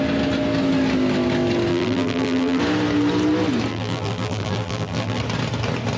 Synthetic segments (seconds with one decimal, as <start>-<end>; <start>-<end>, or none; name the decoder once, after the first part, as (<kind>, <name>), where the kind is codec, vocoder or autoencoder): 1.7-2.6 (vocoder, BigVGAN v2); 3.7-5.2